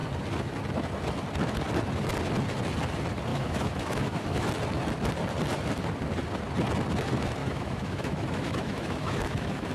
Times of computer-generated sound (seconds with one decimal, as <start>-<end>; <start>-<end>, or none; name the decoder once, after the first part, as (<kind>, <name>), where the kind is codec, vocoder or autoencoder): 3.3-4.5 (autoencoder, DAC-VAE); 7.4-9.7